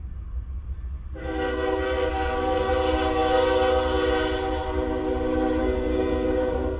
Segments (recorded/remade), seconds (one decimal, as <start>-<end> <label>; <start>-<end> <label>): 0.0-1.2 recorded; 1.2-2.7 remade; 2.7-5.6 recorded; 5.6-6.8 remade